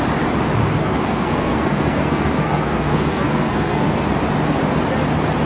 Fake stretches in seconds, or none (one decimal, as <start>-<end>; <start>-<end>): 0.8-4.1